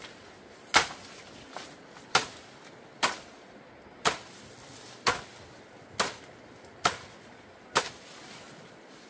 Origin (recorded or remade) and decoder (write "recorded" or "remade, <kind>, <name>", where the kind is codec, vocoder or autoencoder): recorded